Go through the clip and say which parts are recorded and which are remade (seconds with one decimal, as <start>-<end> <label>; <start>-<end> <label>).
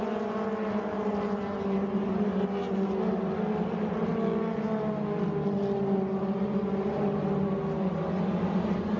0.0-9.0 recorded